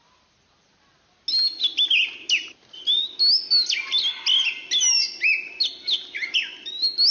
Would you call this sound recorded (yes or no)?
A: yes